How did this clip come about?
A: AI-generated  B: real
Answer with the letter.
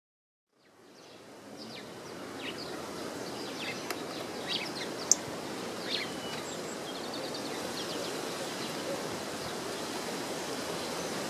B